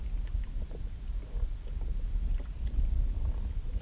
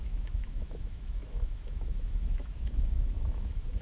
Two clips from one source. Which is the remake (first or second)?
second